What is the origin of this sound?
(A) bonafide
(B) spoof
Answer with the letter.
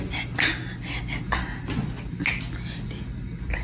A